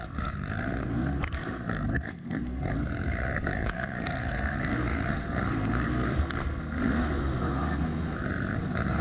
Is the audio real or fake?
fake